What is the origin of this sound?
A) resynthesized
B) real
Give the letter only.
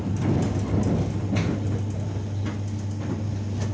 B